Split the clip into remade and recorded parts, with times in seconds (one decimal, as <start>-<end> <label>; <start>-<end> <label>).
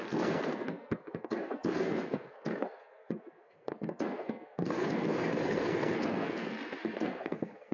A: 0.0-7.7 remade